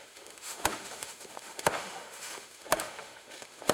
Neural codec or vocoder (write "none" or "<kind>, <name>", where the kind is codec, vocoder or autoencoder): autoencoder, DAC-VAE